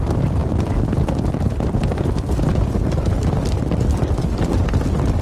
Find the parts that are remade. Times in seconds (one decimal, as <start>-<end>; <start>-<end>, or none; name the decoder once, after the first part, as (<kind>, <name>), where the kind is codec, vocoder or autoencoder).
none